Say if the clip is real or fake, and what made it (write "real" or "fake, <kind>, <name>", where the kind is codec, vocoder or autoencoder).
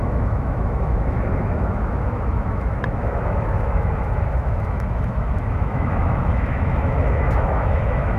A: fake, autoencoder, DAC-VAE